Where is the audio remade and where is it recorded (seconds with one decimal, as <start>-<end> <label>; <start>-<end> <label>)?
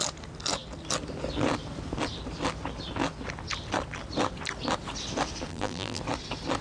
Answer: 0.0-5.5 recorded; 5.5-6.0 remade; 6.0-6.6 recorded